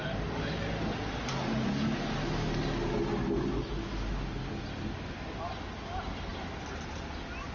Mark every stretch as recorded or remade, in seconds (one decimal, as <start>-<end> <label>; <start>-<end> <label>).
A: 0.0-6.3 recorded; 6.3-7.0 remade; 7.0-7.5 recorded